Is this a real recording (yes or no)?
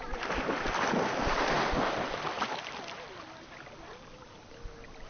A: no